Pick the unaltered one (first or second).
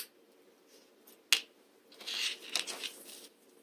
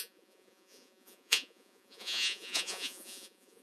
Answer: first